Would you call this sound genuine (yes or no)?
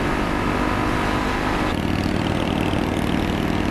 yes